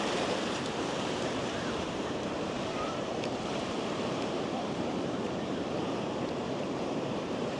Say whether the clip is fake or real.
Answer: fake